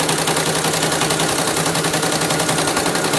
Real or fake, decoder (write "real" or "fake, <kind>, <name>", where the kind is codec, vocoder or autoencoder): real